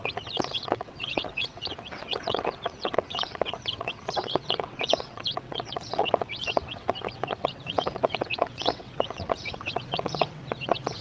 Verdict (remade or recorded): remade